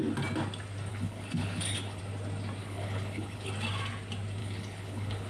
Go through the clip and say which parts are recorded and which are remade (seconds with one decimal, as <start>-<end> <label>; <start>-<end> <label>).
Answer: 0.0-0.9 recorded; 0.9-2.0 remade; 2.0-2.6 recorded; 2.6-3.5 remade; 3.5-4.4 recorded; 4.4-5.3 remade